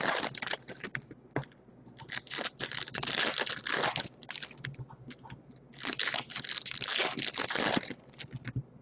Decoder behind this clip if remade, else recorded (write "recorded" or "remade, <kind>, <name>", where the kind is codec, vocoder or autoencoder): recorded